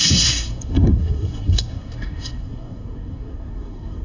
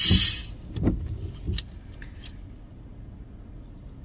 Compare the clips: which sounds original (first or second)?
second